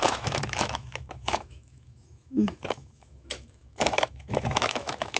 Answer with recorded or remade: remade